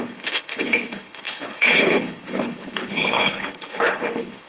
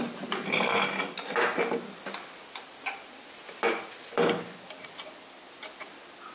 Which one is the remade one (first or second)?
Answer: first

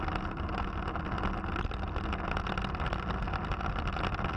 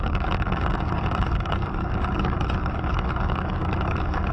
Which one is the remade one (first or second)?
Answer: second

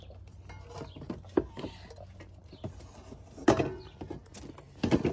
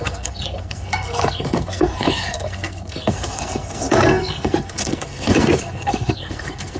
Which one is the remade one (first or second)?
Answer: second